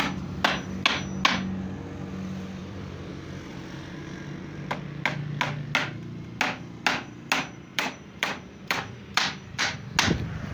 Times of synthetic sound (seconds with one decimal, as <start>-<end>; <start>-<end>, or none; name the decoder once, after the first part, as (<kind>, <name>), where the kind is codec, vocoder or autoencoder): 2.6-3.1 (vocoder, BigVGAN v2); 3.5-4.0; 7.7-9.6